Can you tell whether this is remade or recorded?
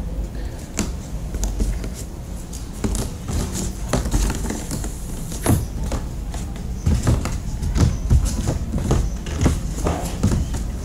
recorded